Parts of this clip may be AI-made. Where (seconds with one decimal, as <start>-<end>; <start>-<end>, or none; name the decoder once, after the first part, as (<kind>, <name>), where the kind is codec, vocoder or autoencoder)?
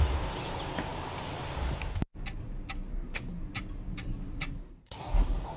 2.9-3.4 (codec, SNAC); 4.6-5.6